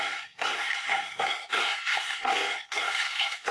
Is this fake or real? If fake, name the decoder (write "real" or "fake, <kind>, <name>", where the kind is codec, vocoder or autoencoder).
fake, codec, SNAC